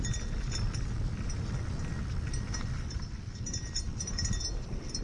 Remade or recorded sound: recorded